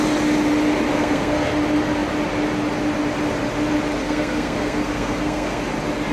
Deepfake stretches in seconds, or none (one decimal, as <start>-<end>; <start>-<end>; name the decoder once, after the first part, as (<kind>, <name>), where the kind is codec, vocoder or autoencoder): 0.9-1.5 (codec, SNAC); 4.0-5.6